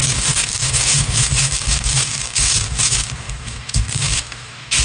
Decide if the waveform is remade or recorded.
remade